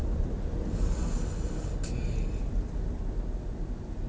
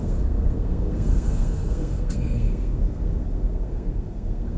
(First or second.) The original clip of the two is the first